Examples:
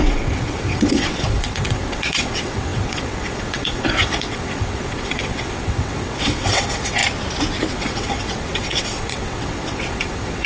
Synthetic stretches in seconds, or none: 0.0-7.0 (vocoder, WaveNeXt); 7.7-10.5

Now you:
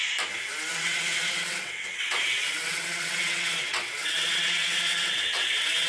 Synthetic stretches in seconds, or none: 0.7-5.9 (vocoder, WaveNeXt)

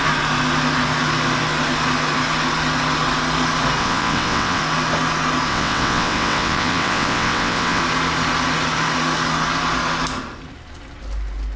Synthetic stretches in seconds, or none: 3.8-4.6 (vocoder, WaveNeXt); 5.5-7.8

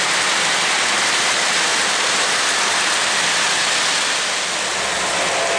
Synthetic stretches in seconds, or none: none

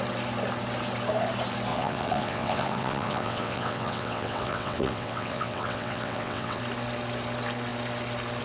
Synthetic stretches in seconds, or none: 1.7-6.6 (vocoder, WaveNeXt)